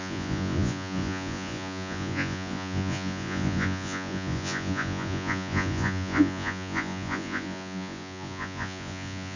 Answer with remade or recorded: remade